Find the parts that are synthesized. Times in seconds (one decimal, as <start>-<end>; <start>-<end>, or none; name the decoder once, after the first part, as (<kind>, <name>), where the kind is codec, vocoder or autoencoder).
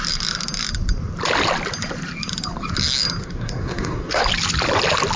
3.2-4.2 (codec, SNAC)